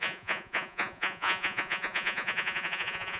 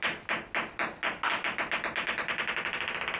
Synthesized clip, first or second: first